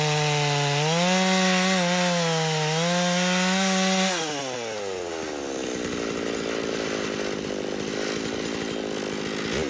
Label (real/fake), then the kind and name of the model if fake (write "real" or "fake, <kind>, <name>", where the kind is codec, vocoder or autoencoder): real